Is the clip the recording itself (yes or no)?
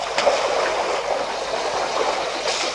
yes